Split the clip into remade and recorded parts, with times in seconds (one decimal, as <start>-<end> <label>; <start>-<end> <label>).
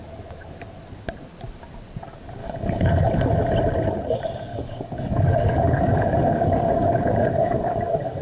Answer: 0.0-2.4 recorded; 2.4-3.0 remade; 3.0-4.5 recorded; 4.5-8.2 remade